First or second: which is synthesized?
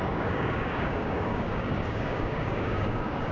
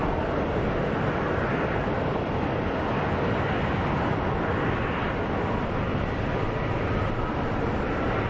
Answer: first